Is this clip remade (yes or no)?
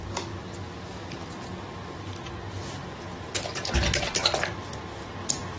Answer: no